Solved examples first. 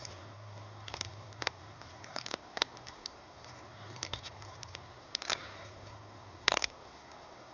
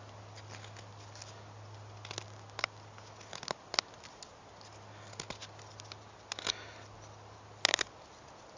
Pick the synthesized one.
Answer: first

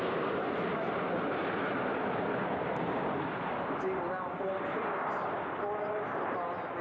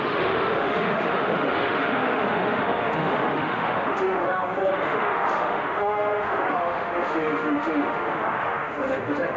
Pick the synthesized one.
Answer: second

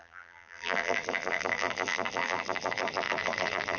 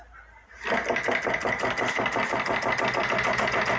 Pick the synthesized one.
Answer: first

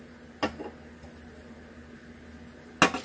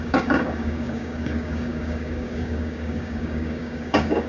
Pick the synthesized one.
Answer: second